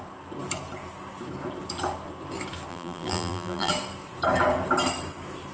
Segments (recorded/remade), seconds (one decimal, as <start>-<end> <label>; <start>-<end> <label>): 0.0-2.7 recorded; 2.7-3.7 remade; 3.7-5.5 recorded